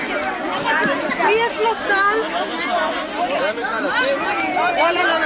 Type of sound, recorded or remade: recorded